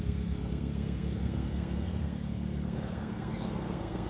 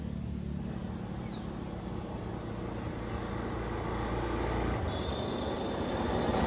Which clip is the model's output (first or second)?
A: first